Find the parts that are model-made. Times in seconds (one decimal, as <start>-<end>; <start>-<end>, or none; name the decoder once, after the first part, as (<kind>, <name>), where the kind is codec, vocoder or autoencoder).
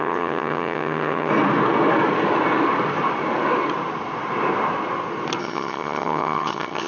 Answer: 0.0-1.3 (vocoder, HiFi-GAN); 5.4-6.9